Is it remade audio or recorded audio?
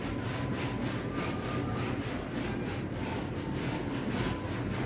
recorded